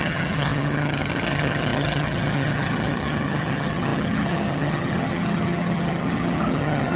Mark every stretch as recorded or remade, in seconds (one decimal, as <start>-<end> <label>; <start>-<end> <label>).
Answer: 0.0-7.0 remade